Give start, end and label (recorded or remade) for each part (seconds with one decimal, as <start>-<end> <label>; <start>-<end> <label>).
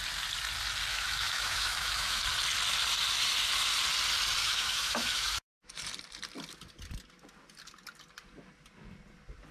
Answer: 0.0-0.9 recorded; 0.9-2.2 remade; 2.2-4.4 recorded; 4.4-5.7 remade; 5.7-9.5 recorded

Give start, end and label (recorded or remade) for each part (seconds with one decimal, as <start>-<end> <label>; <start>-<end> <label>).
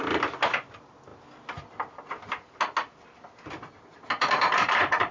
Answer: 0.0-1.1 remade; 1.1-4.2 recorded; 4.2-5.1 remade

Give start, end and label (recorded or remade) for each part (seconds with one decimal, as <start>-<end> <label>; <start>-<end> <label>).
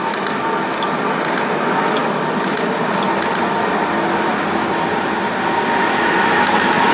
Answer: 0.0-6.9 recorded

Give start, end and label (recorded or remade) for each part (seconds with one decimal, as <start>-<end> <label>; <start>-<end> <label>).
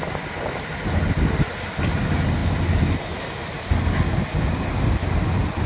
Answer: 0.0-5.7 recorded